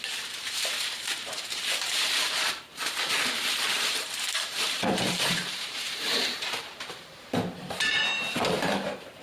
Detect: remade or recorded remade